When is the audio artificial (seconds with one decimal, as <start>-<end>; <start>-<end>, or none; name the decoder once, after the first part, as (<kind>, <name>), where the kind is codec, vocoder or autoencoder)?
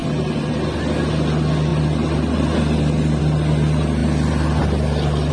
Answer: 0.0-1.0 (vocoder, BigVGAN v2); 1.7-3.2; 4.0-5.3